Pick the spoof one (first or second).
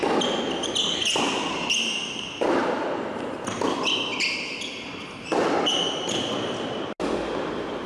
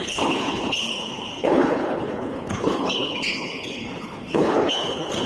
second